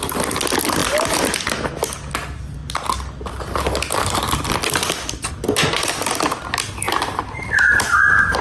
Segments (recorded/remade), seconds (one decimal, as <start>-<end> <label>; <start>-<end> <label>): 0.0-8.4 recorded